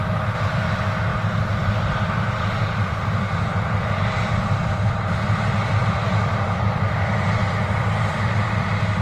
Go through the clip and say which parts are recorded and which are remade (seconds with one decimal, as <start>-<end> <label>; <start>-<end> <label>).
0.0-9.0 recorded